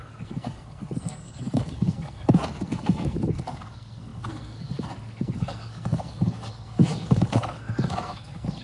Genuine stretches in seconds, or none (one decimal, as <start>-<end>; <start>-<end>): none

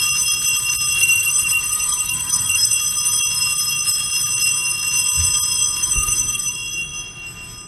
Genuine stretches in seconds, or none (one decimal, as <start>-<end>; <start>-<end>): 0.0-1.0; 2.7-5.8; 6.5-7.7

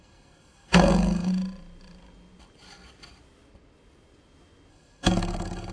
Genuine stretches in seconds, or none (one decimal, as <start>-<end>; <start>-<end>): 1.3-4.7

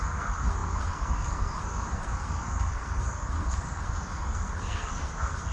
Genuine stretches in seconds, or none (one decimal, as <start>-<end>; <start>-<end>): none

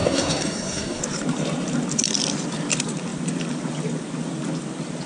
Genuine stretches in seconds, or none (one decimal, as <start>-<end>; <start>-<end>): 1.0-5.1

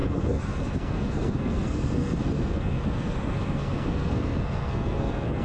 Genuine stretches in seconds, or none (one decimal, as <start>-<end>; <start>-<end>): none